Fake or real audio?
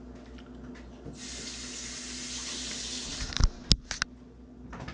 real